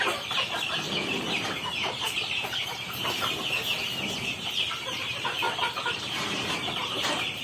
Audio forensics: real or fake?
fake